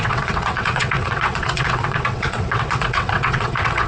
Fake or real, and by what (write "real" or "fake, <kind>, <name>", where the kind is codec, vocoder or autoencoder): fake, vocoder, WaveNeXt